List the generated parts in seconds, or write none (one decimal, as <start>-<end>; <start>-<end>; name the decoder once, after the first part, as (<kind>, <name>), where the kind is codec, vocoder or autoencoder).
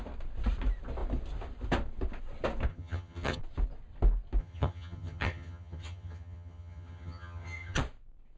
2.7-3.4 (vocoder, HiFi-GAN); 4.4-7.8